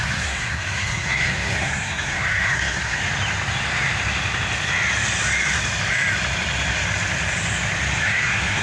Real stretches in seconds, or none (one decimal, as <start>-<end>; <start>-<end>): 3.0-8.0